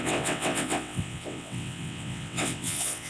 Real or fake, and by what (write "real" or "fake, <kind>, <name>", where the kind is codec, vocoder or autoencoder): fake, vocoder, WaveNeXt